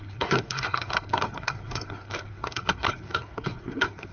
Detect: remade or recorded remade